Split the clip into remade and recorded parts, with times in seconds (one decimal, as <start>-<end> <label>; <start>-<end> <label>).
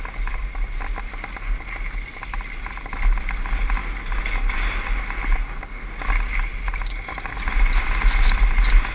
0.0-8.9 recorded